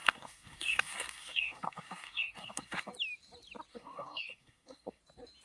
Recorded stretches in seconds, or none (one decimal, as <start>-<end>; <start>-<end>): 2.9-3.7; 5.0-5.4